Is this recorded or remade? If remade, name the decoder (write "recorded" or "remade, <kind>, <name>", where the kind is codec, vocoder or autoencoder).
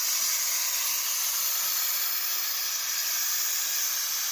recorded